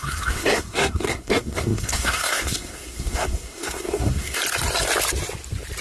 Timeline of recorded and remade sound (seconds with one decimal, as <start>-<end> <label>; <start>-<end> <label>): 0.0-4.4 remade; 4.4-5.8 recorded